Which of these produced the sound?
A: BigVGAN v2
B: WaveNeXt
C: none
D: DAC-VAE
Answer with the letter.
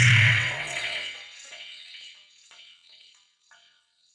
B